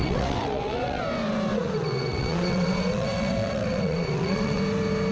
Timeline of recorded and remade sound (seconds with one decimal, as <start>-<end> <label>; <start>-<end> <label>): 0.0-1.0 remade; 1.0-1.5 recorded; 1.5-4.6 remade; 4.6-5.1 recorded